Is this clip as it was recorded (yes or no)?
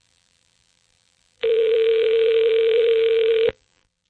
no